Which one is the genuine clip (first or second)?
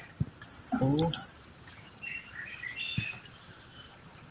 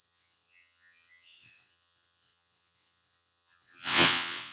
first